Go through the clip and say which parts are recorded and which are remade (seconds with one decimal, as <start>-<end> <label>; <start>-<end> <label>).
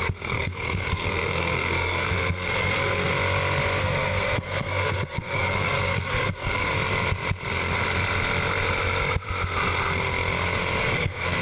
0.0-3.1 remade; 3.1-3.8 recorded; 3.8-6.7 remade; 6.7-10.8 recorded; 10.8-11.4 remade